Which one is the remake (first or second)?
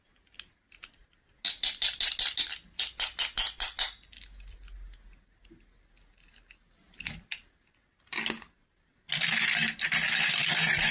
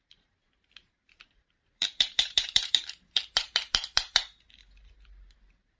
second